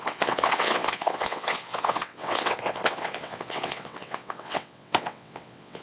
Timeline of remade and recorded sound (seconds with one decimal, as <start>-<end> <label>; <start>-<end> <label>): 0.0-5.8 remade